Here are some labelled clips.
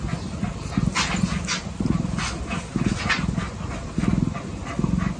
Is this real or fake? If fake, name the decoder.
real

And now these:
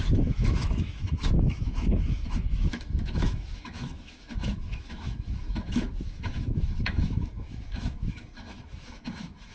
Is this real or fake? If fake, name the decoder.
fake, autoencoder, DAC-VAE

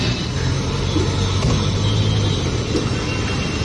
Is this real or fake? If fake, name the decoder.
real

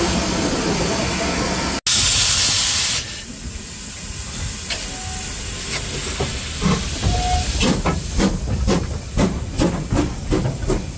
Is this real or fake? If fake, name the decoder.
real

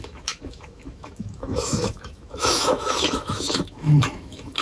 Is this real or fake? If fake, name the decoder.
fake, autoencoder, DAC-VAE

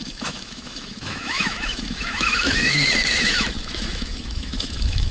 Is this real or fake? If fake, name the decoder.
fake, autoencoder, DAC-VAE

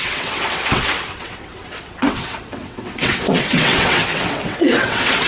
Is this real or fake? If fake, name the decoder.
fake, vocoder, WaveNeXt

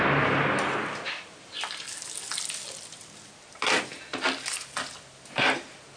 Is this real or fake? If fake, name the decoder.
real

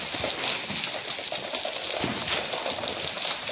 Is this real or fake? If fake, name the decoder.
real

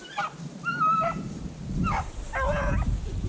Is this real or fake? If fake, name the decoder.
real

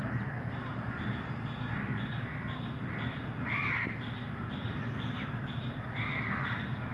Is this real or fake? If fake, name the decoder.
real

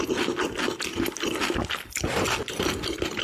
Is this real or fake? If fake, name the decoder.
real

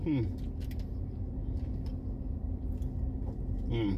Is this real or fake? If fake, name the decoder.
real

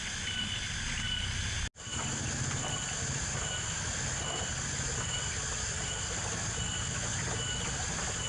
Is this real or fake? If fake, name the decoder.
real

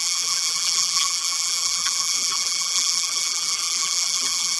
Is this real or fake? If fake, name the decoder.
fake, vocoder, BigVGAN v2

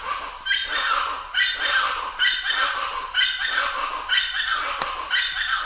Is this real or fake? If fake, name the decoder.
real